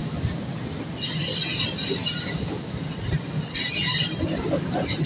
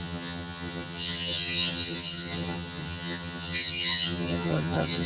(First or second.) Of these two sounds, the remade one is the second